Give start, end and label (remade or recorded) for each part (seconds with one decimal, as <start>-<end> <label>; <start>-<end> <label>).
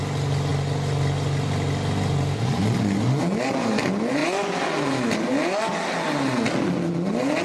0.0-7.4 recorded